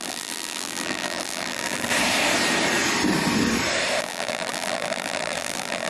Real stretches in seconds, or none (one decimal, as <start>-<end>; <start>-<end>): 1.9-4.0